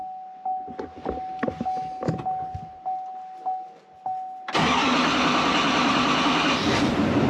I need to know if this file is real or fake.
real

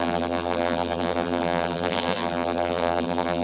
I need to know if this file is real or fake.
fake